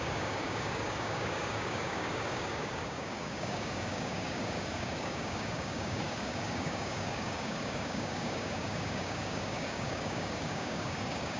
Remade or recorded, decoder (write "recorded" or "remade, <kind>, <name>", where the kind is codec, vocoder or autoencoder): remade, codec, DAC